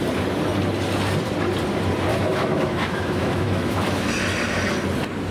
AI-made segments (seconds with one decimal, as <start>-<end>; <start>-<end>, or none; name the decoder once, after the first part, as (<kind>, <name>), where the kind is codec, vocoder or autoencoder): 2.1-4.1 (autoencoder, DAC-VAE)